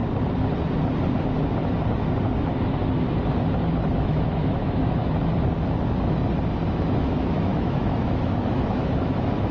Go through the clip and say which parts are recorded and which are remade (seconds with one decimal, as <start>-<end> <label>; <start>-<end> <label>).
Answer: 0.0-3.8 recorded; 3.8-5.0 remade; 5.0-6.7 recorded; 6.7-9.5 remade